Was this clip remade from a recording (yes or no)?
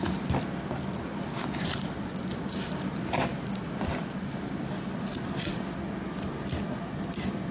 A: no